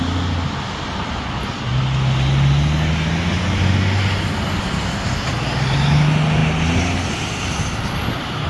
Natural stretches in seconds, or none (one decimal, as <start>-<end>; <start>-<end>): 0.0-8.5